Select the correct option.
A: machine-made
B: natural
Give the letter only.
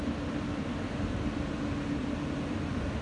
B